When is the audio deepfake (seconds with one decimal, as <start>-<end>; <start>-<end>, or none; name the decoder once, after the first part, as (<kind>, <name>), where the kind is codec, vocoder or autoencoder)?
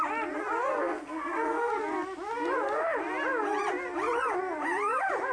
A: 0.7-1.7 (codec, SNAC)